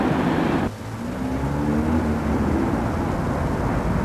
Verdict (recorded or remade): recorded